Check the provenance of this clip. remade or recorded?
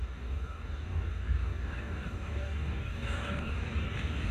remade